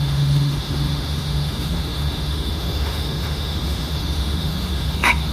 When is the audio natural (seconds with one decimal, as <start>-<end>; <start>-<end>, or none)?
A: none